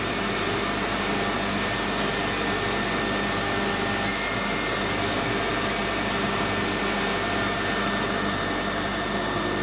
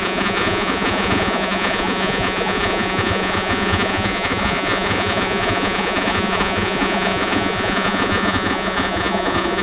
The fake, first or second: second